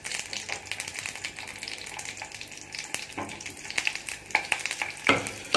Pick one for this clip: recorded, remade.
recorded